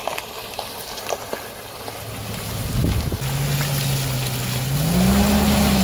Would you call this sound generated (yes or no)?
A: no